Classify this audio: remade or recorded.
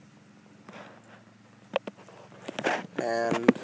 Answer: recorded